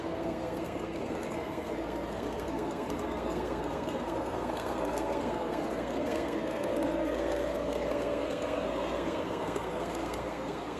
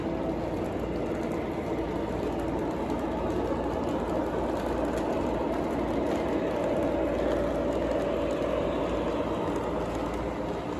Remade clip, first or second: first